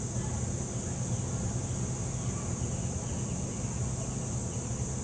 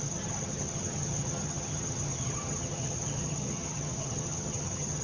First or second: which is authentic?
first